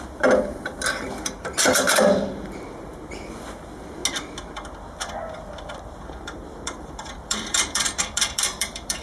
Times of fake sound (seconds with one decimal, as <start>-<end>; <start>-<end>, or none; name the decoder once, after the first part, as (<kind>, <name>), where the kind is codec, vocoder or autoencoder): 0.0-4.0 (vocoder, BigVGAN v2); 5.2-9.0